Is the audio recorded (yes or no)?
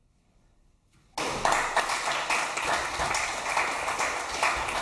yes